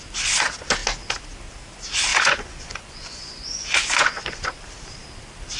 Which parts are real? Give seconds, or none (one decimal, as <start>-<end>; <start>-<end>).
0.0-2.1; 4.6-5.6